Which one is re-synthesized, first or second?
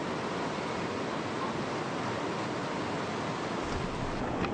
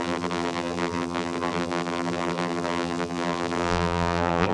second